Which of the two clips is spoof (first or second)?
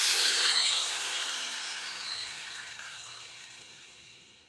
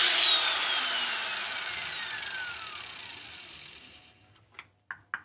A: first